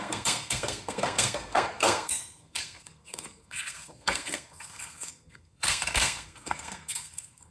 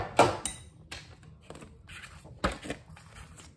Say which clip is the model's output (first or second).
first